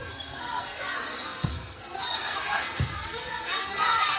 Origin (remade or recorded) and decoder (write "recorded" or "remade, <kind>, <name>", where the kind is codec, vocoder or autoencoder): remade, codec, SNAC